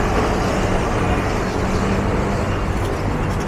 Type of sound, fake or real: real